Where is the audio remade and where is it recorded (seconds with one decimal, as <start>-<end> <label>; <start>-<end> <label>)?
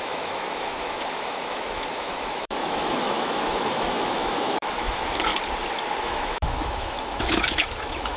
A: 0.0-5.3 remade; 5.3-6.0 recorded; 6.0-8.2 remade